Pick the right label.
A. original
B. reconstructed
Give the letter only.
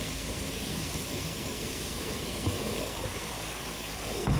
B